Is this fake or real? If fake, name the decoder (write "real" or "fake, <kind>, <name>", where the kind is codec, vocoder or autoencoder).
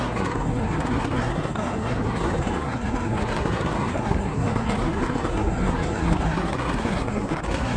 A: fake, codec, SNAC